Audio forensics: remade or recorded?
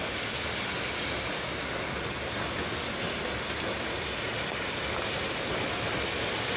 recorded